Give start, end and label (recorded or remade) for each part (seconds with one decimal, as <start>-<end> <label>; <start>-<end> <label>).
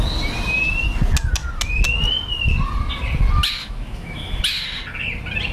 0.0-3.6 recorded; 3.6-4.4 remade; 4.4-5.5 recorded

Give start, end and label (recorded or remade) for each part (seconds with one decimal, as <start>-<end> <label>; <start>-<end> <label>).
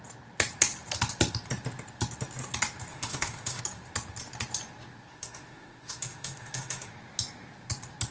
0.0-2.9 recorded; 2.9-3.6 remade; 3.6-5.1 recorded; 5.1-6.9 remade; 6.9-8.1 recorded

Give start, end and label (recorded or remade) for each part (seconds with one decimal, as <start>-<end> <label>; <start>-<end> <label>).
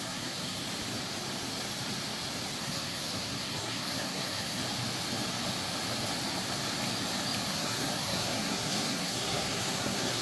0.0-0.6 remade; 0.6-2.6 recorded; 2.6-4.6 remade; 4.6-7.5 recorded; 7.5-10.2 remade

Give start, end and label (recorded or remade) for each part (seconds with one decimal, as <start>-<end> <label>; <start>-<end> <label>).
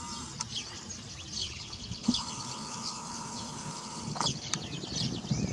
0.0-1.4 recorded; 1.4-4.5 remade; 4.5-5.5 recorded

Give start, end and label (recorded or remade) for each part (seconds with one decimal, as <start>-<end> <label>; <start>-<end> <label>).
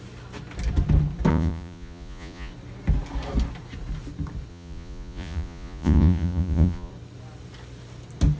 0.0-1.3 recorded; 1.3-2.5 remade; 2.5-4.5 recorded; 4.5-6.9 remade; 6.9-8.4 recorded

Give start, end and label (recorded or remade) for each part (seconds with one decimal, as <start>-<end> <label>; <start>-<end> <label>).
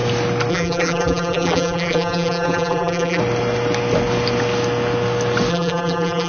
0.0-0.5 recorded; 0.5-3.2 remade; 3.2-5.5 recorded; 5.5-6.3 remade